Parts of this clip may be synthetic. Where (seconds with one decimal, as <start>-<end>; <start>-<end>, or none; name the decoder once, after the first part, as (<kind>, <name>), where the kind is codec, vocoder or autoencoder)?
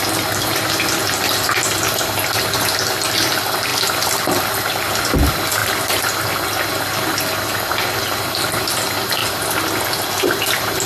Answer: none